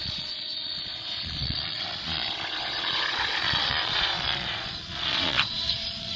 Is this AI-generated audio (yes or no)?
yes